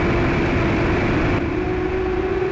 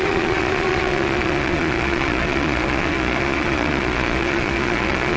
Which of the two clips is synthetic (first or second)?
second